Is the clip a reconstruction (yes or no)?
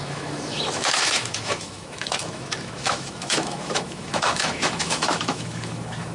yes